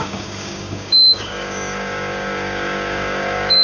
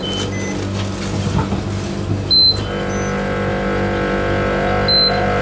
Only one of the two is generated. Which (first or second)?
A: first